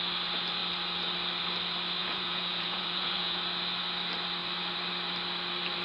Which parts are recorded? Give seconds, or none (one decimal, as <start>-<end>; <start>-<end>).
0.0-2.0; 3.4-5.8